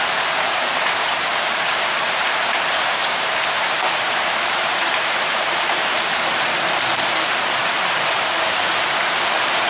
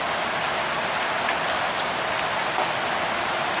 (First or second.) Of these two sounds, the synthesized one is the first